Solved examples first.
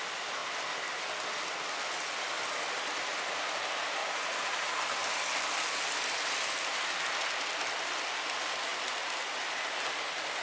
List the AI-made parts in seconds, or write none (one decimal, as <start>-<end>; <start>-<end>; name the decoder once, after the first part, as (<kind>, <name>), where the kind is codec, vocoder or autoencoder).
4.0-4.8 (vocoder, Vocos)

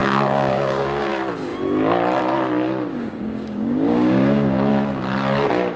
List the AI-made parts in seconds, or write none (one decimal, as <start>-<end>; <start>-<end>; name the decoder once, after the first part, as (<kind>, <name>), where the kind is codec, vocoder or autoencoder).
0.0-1.1 (codec, DAC); 2.9-4.7

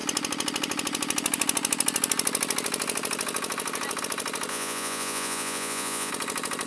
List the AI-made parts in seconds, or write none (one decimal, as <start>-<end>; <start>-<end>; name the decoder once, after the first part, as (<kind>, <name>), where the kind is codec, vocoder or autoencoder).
4.5-6.1 (vocoder, Vocos)

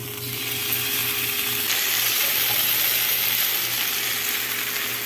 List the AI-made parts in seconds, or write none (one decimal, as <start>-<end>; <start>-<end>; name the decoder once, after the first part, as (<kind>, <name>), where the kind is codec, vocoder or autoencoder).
1.0-4.1 (vocoder, BigVGAN v2)

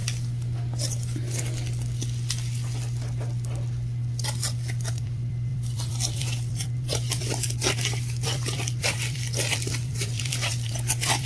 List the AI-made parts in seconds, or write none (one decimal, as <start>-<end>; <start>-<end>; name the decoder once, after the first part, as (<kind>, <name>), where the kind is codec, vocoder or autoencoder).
4.9-11.3 (vocoder, BigVGAN v2)

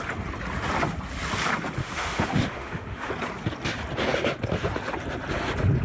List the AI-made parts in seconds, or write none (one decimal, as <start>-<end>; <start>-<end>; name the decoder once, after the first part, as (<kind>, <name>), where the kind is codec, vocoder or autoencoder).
1.8-3.1 (autoencoder, DAC-VAE)